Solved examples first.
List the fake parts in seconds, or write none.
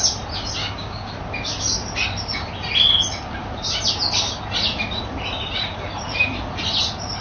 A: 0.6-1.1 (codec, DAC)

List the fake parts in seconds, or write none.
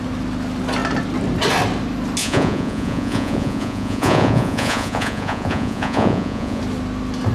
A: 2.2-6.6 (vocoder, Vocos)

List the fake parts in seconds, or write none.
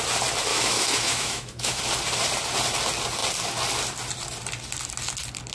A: 0.5-1.8 (autoencoder, DAC-VAE)